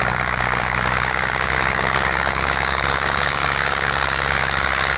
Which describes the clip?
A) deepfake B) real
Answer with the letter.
A